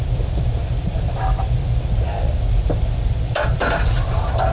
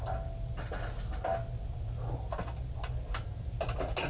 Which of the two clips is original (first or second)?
second